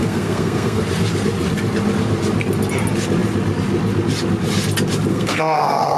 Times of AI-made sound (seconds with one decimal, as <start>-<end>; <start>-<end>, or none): 0.0-0.8; 5.1-6.0